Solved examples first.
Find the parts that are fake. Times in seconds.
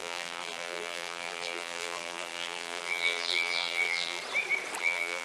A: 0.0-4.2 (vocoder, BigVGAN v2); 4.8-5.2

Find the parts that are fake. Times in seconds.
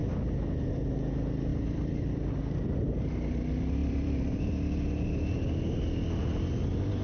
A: 1.5-2.4 (vocoder, BigVGAN v2); 3.8-4.4